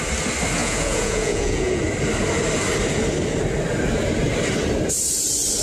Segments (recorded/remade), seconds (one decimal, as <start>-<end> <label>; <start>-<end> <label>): 0.0-0.6 recorded; 0.6-1.8 remade; 1.8-5.6 recorded